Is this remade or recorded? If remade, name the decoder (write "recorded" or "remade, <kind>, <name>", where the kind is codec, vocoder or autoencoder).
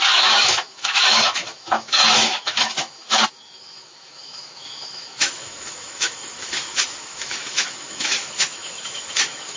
remade, autoencoder, DAC-VAE